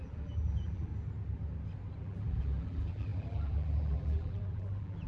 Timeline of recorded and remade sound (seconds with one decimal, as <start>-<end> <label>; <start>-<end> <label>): 0.0-0.9 remade; 0.9-2.0 recorded; 2.0-5.1 remade